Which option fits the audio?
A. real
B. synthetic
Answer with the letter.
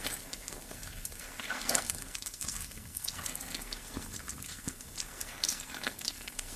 B